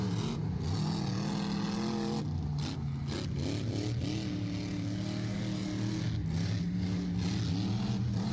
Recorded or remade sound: recorded